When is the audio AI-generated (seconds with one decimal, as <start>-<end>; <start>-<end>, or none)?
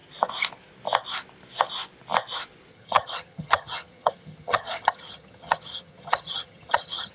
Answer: 2.7-7.1